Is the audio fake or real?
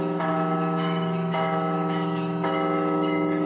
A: fake